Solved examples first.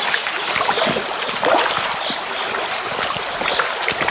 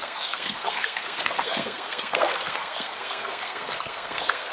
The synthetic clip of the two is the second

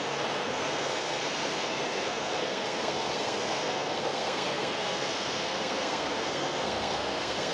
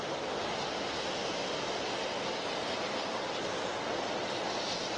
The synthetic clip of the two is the first